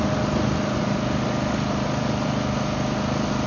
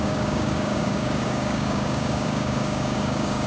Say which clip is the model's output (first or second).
second